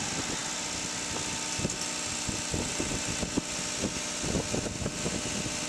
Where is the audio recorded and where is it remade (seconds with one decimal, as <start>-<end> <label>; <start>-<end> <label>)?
0.0-5.7 recorded